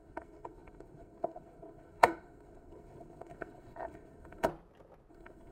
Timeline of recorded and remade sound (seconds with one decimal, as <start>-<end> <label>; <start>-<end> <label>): 0.0-4.5 remade; 4.5-5.1 recorded; 5.1-5.5 remade